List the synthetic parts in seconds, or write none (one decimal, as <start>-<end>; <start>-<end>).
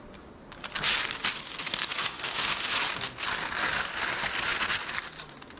1.6-2.7